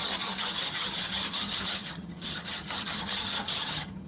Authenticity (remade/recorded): remade